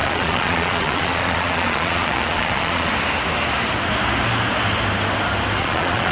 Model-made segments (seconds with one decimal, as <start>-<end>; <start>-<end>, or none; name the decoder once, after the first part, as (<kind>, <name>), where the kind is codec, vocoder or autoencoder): 0.0-2.9 (vocoder, Vocos); 5.6-6.1